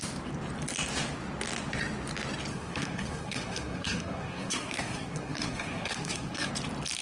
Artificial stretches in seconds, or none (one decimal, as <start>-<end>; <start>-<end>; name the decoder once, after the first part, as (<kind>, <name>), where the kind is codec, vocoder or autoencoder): 2.5-6.5 (codec, SNAC)